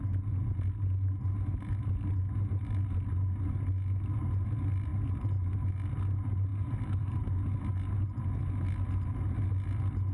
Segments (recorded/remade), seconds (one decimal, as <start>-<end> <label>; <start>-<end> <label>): 0.0-4.9 recorded; 4.9-5.5 remade; 5.5-6.5 recorded; 6.5-7.2 remade; 7.2-10.1 recorded